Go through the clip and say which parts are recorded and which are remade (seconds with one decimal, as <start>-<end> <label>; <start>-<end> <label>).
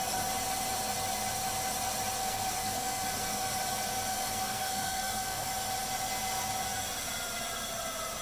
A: 0.0-2.2 recorded; 2.2-3.6 remade; 3.6-4.1 recorded; 4.1-5.5 remade; 5.5-8.2 recorded